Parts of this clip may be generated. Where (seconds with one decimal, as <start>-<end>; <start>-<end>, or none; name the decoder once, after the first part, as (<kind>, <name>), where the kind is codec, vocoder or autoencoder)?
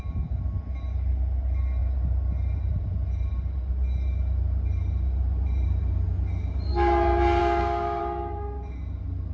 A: 7.4-8.0 (codec, SNAC)